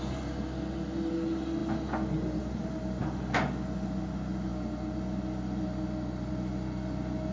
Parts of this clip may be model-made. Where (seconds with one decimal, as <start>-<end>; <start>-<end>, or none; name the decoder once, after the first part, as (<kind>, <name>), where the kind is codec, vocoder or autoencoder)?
none